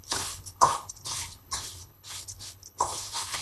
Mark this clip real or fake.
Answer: fake